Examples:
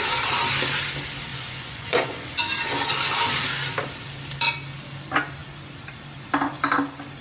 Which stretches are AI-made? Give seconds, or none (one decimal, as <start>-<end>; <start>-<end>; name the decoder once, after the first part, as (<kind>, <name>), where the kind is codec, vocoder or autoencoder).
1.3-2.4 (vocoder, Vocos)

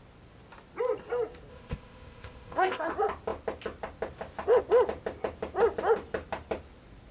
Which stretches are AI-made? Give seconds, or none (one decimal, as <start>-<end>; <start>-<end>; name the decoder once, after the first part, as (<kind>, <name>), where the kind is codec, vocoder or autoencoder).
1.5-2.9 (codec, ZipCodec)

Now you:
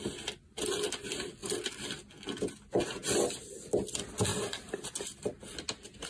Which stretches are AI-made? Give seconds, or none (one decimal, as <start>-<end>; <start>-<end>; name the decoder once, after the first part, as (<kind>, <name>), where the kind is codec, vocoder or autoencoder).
none

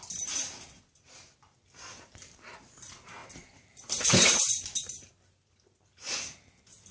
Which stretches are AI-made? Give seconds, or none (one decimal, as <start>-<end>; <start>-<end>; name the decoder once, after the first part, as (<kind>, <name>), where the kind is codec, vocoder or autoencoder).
none

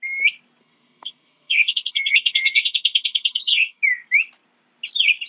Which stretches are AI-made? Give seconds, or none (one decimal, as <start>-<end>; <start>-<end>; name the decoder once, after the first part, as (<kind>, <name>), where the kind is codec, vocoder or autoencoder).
0.6-3.8 (codec, SNAC)

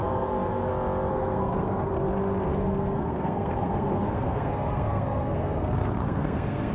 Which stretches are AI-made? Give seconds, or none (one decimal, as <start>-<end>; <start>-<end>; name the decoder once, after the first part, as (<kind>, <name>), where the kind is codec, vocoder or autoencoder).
0.0-0.7 (codec, SNAC); 1.1-1.9; 2.5-6.7